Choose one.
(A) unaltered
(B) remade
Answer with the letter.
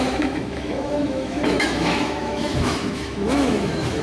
B